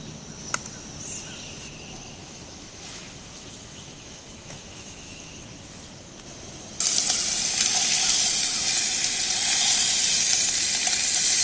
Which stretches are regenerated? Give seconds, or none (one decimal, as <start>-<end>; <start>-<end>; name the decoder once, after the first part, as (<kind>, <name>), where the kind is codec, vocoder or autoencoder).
2.2-5.3 (autoencoder, DAC-VAE)

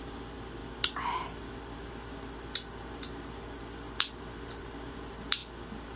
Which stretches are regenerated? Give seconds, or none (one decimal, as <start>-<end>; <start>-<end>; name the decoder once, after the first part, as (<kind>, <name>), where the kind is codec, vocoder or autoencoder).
0.0-6.0 (vocoder, BigVGAN v2)

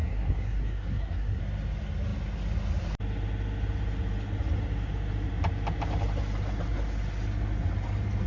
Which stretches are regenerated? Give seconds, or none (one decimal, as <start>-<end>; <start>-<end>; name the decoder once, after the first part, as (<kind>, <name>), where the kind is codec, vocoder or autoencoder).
0.0-1.4 (codec, SNAC)

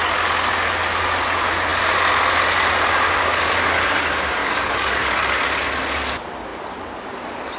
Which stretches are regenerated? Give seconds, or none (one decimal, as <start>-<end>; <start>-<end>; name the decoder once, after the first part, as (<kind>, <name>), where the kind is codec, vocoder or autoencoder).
3.3-3.8 (codec, DAC); 4.4-5.3

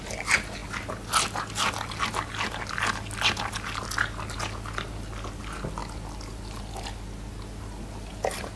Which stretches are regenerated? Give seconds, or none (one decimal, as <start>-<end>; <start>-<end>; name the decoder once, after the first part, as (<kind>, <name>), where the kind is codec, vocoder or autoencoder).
none

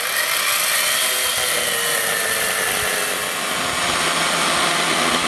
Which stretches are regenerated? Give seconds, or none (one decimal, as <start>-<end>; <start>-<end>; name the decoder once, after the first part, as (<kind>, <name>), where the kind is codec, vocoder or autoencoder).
none